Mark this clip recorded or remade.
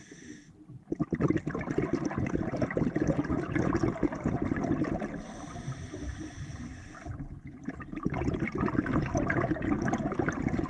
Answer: recorded